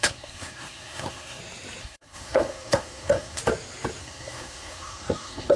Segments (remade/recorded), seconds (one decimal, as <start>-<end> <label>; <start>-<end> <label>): 0.0-1.4 remade; 1.4-1.8 recorded; 1.8-3.4 remade; 3.4-4.0 recorded; 4.0-5.6 remade